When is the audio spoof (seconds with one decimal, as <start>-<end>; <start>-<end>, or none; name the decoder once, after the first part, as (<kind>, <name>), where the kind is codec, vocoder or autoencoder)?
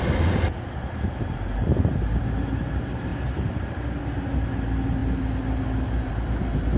none